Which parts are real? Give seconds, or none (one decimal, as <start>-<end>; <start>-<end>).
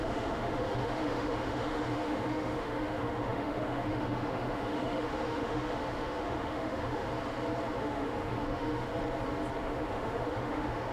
7.1-7.8; 8.9-9.6